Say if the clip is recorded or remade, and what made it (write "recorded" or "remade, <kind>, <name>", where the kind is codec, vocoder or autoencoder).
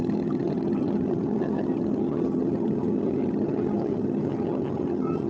remade, vocoder, HiFi-GAN